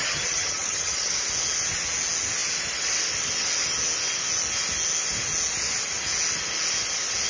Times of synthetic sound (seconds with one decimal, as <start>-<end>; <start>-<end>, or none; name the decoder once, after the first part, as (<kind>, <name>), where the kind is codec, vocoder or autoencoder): 0.0-1.2 (vocoder, HiFi-GAN)

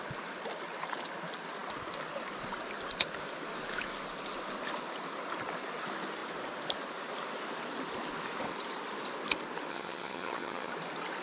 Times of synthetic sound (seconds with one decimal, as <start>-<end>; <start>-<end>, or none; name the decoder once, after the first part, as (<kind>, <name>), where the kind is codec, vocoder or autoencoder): 9.7-10.7 (vocoder, HiFi-GAN)

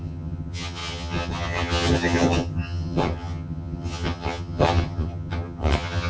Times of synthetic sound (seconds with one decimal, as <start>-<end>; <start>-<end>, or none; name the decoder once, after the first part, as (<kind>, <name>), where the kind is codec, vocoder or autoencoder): 0.0-6.1 (vocoder, HiFi-GAN)

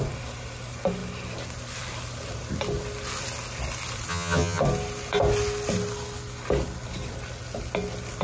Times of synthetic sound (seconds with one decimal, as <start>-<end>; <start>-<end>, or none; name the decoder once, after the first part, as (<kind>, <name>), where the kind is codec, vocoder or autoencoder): 4.1-4.6 (vocoder, HiFi-GAN)

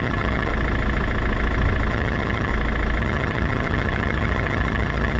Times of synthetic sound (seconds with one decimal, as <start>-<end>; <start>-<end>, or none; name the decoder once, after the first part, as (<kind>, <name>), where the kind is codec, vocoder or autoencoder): 0.0-0.5 (vocoder, HiFi-GAN); 1.9-2.5; 3.0-5.2

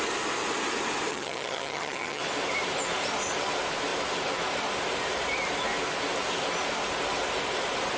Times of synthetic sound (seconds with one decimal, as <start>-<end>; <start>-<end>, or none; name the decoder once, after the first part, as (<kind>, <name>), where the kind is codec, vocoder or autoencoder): 1.1-2.2 (vocoder, HiFi-GAN)

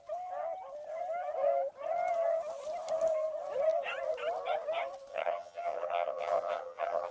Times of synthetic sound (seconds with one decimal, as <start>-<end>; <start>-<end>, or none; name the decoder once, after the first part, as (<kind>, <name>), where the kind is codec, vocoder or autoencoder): 5.1-7.1 (vocoder, HiFi-GAN)

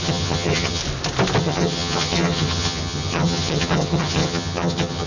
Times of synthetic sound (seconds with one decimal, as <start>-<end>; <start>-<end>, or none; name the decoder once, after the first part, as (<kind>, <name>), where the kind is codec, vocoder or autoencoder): 0.0-0.8 (vocoder, HiFi-GAN); 1.4-5.1